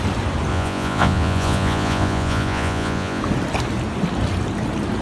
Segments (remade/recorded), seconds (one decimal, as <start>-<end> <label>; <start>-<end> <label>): 0.0-0.5 recorded; 0.5-3.2 remade; 3.2-5.0 recorded